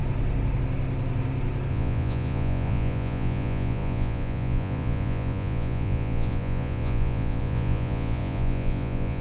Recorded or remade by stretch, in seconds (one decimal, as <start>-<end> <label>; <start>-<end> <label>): 0.0-1.7 recorded; 1.7-9.2 remade